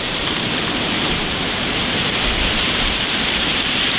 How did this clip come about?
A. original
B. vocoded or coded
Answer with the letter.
B